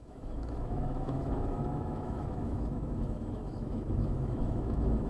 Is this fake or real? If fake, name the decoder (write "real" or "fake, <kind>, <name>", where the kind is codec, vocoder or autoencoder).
fake, autoencoder, DAC-VAE